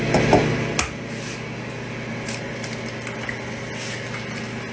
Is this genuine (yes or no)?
yes